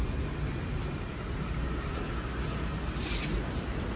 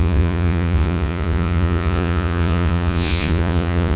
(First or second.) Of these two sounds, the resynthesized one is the second